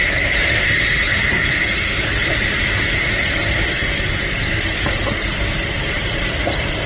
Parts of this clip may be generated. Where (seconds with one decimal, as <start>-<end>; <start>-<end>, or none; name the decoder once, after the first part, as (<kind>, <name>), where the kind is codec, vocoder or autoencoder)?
none